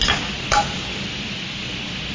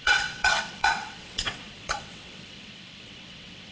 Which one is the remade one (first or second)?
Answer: second